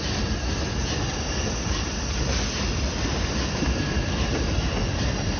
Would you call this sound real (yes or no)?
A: yes